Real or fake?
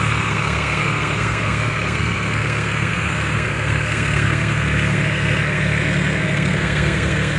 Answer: fake